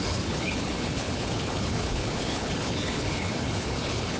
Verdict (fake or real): fake